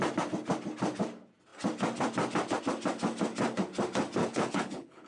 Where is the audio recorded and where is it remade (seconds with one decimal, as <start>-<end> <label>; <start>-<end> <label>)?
0.0-4.2 recorded; 4.2-5.1 remade